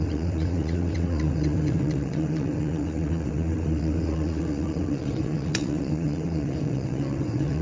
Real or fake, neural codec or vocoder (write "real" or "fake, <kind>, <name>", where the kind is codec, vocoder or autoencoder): fake, vocoder, WaveNeXt